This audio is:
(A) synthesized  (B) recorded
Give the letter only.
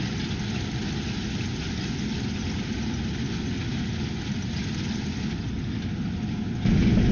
B